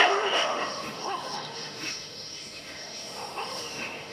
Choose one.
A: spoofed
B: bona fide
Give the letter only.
A